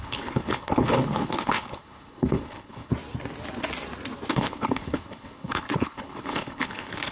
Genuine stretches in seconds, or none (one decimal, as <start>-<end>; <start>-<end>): 2.9-4.3